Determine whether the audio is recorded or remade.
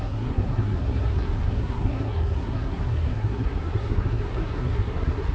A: remade